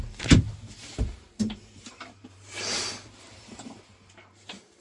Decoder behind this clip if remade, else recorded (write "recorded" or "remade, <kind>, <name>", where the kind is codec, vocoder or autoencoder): remade, vocoder, BigVGAN v2